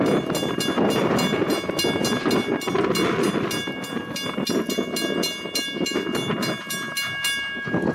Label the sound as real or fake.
real